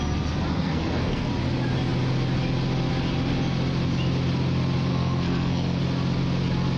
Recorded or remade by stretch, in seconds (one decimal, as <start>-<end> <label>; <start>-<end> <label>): 0.0-0.5 recorded; 0.5-1.3 remade; 1.3-4.9 recorded; 4.9-5.8 remade; 5.8-6.8 recorded